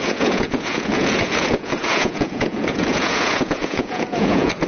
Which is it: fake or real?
fake